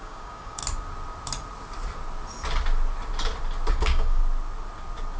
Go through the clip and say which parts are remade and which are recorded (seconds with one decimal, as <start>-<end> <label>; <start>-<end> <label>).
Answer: 0.0-0.6 remade; 0.6-3.7 recorded; 3.7-4.2 remade; 4.2-5.2 recorded

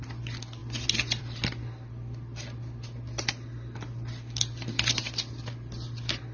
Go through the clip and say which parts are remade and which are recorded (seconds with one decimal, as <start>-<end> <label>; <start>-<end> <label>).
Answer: 0.0-6.3 recorded

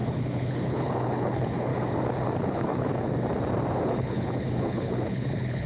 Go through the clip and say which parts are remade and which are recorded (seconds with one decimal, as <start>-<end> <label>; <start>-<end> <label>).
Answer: 0.0-1.7 remade; 1.7-2.5 recorded; 2.5-3.1 remade; 3.1-3.9 recorded; 3.9-5.7 remade

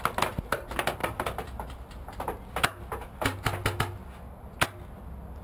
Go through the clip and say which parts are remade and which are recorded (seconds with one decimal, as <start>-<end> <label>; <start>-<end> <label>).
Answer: 0.0-5.4 recorded

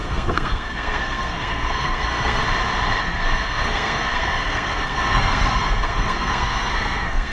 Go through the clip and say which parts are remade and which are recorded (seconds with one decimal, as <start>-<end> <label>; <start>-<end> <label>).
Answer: 0.0-2.4 remade; 2.4-3.0 recorded; 3.0-7.3 remade